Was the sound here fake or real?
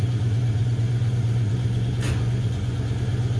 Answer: fake